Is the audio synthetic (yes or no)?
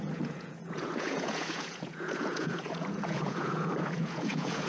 yes